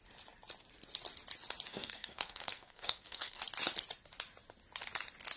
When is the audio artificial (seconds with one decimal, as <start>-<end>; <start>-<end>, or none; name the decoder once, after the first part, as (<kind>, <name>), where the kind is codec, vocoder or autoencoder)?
1.7-3.4 (codec, SNAC)